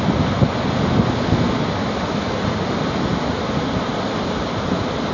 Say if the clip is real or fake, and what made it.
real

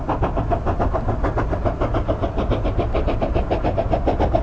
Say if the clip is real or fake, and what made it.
real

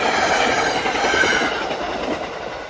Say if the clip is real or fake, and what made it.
real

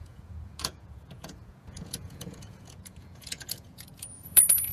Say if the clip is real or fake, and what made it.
fake, vocoder, Vocos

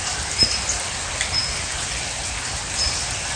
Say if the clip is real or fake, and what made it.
real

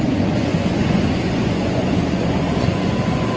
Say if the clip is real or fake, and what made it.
fake, vocoder, Vocos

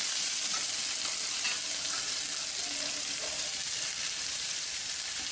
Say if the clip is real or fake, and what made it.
real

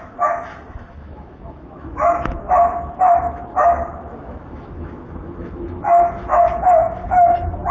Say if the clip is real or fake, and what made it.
fake, autoencoder, DAC-VAE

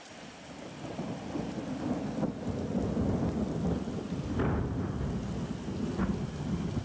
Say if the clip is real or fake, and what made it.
real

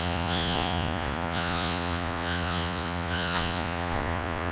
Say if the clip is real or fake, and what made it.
fake, vocoder, Vocos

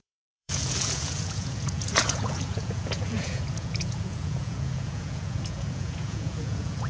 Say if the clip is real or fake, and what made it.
fake, vocoder, Vocos